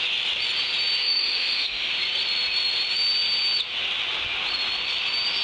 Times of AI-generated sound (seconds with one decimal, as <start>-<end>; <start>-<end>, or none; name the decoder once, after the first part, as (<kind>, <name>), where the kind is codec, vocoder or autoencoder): 1.0-1.9 (autoencoder, DAC-VAE)